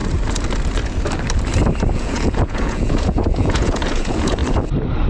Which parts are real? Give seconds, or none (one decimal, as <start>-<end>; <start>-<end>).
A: 0.0-1.9; 4.4-5.1